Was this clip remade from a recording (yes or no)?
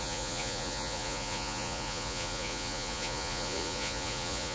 yes